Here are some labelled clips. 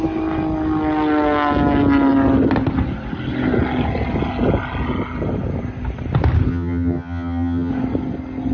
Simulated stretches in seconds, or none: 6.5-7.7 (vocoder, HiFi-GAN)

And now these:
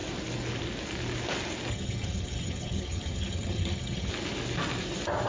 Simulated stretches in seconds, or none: 1.7-4.1 (vocoder, HiFi-GAN)

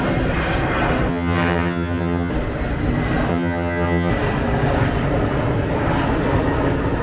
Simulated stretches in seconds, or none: 1.1-2.3 (vocoder, HiFi-GAN); 3.3-4.1